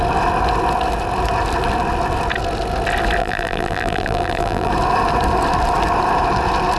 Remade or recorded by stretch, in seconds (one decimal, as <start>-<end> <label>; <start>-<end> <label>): 0.0-3.2 recorded; 3.2-4.7 remade; 4.7-6.8 recorded

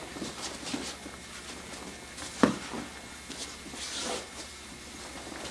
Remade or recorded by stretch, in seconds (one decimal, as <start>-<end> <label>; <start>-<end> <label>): 0.0-1.0 remade; 1.0-4.3 recorded; 4.3-5.5 remade

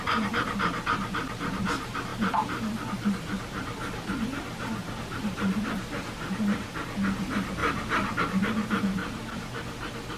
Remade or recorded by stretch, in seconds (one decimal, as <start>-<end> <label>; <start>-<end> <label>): 0.0-2.1 remade; 2.1-4.9 recorded; 4.9-7.6 remade; 7.6-8.2 recorded; 8.2-10.2 remade

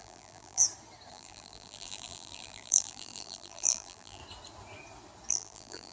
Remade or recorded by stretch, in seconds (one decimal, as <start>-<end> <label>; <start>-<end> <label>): 0.0-0.6 remade; 0.6-1.1 recorded; 1.1-4.2 remade; 4.2-5.3 recorded; 5.3-5.9 remade

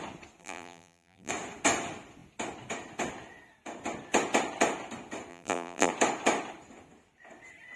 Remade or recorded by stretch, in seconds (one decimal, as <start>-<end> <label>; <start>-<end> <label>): 0.0-0.4 recorded; 0.4-1.3 remade; 1.3-5.3 recorded; 5.3-5.9 remade; 5.9-7.8 recorded

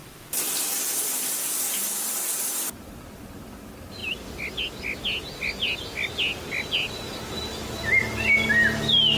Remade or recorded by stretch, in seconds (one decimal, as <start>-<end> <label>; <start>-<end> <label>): 0.0-0.7 remade; 0.7-4.0 recorded; 4.0-4.6 remade; 4.6-9.2 recorded

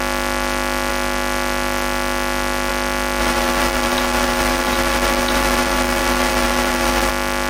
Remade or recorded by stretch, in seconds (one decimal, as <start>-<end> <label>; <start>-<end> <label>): 0.0-3.2 recorded; 3.2-7.1 remade; 7.1-7.5 recorded